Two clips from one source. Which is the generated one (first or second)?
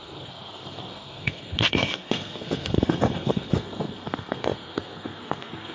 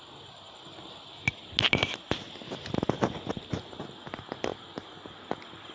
first